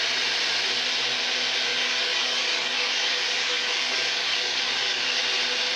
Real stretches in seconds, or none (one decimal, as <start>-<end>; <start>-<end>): 0.0-1.7; 5.2-5.8